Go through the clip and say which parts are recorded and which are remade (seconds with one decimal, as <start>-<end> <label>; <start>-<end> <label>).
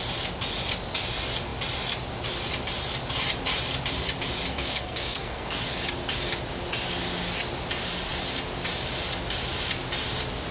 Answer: 0.0-4.5 recorded; 4.5-5.6 remade; 5.6-10.5 recorded